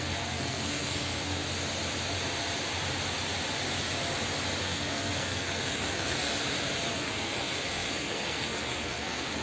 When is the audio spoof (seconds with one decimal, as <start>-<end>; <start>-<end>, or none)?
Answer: 0.0-1.4; 4.6-6.3; 6.9-9.4